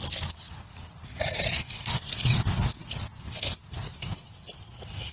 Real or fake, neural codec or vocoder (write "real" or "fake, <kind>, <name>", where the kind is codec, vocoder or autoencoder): real